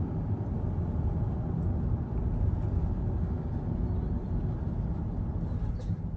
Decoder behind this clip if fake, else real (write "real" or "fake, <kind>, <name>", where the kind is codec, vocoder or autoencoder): real